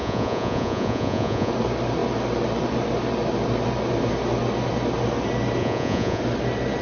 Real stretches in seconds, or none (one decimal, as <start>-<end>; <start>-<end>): 1.5-5.6; 6.2-6.8